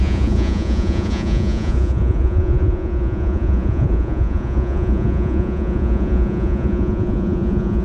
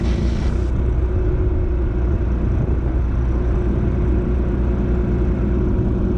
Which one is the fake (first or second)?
first